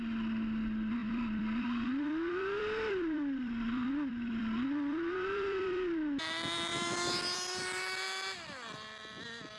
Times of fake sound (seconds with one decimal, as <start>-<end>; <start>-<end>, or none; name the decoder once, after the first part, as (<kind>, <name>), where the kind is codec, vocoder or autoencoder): 1.0-6.2 (vocoder, BigVGAN v2); 6.7-7.8